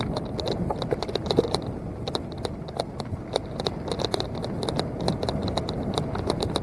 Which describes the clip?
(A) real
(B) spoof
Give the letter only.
A